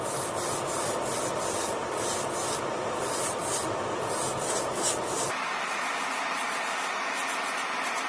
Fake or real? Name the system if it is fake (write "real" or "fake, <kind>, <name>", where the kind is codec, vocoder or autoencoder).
real